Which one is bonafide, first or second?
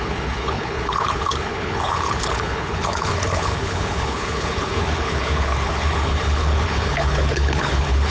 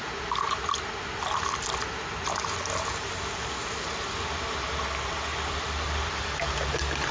second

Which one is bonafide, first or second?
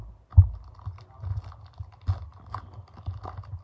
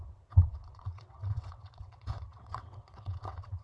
first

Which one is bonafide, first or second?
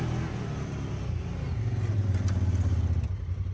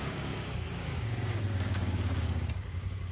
first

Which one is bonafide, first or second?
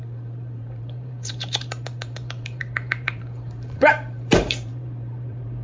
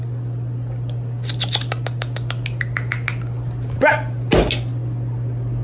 second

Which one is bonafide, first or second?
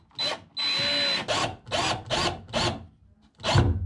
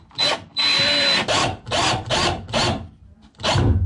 first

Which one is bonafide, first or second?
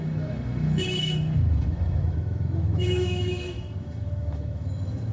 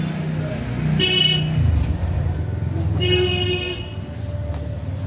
second